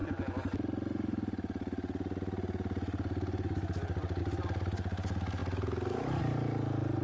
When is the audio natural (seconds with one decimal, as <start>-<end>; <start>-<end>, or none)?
0.0-7.0